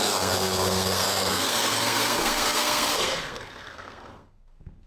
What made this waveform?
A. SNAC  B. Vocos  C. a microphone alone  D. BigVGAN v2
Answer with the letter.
A